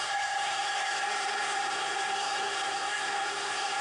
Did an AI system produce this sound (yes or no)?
yes